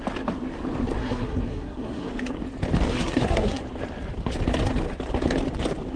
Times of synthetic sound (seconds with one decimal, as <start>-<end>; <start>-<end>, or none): 1.0-2.1; 2.9-3.6

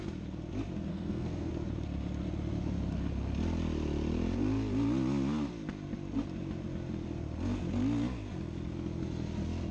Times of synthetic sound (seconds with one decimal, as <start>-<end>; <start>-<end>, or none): 0.9-1.5